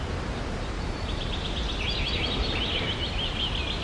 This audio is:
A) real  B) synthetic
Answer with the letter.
A